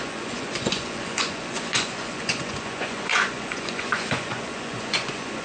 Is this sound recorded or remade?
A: remade